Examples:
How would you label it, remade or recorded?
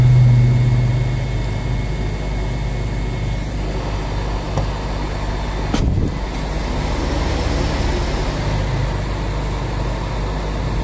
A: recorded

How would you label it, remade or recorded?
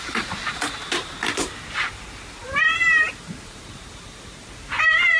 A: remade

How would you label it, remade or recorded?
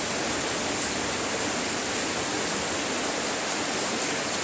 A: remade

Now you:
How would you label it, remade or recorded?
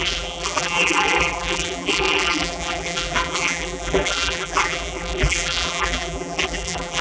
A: remade